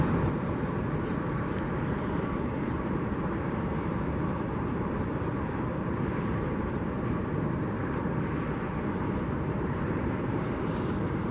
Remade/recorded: remade